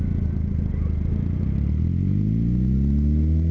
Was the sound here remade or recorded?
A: recorded